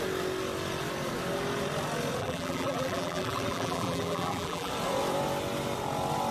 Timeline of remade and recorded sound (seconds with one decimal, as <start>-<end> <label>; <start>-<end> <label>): 0.0-2.2 recorded; 2.2-4.7 remade; 4.7-6.3 recorded